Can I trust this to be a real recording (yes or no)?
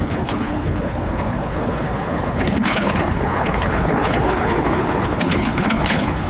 no